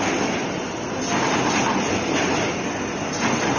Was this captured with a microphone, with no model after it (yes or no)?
yes